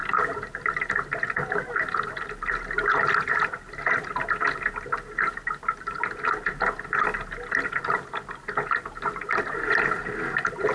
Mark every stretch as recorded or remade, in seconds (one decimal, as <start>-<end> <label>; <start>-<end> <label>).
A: 0.0-10.7 recorded

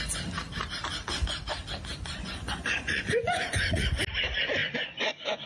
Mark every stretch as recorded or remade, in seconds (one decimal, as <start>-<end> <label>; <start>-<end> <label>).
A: 0.0-1.9 recorded; 1.9-4.0 remade; 4.0-4.6 recorded; 4.6-5.5 remade

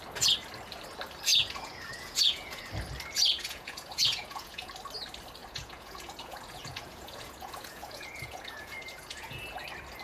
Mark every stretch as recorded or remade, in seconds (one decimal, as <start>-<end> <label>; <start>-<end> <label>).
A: 0.0-1.3 recorded; 1.3-2.6 remade; 2.6-3.2 recorded; 3.2-4.7 remade; 4.7-5.4 recorded; 5.4-9.6 remade; 9.6-10.0 recorded

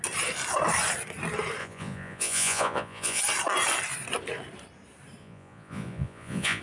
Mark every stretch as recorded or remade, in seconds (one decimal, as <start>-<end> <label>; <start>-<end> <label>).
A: 0.0-1.6 recorded; 1.6-3.2 remade; 3.2-5.2 recorded; 5.2-6.6 remade

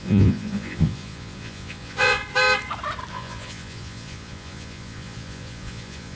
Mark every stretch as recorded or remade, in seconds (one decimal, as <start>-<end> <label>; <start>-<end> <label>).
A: 0.0-2.2 remade; 2.2-3.1 recorded; 3.1-6.2 remade

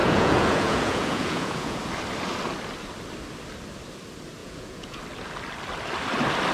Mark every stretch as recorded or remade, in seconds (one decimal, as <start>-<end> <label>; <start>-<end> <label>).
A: 0.0-1.8 remade; 1.8-4.4 recorded; 4.4-5.0 remade; 5.0-6.5 recorded